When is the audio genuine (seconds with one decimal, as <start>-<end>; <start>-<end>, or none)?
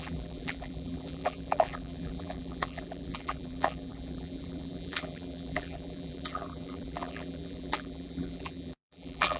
none